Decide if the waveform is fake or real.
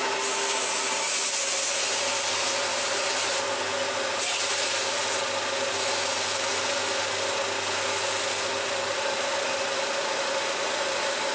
real